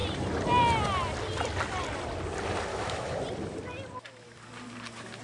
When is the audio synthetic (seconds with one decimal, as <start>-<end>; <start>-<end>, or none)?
2.7-3.2